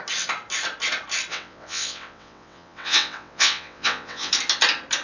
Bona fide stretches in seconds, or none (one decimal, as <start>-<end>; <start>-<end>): 0.0-1.3; 4.3-5.0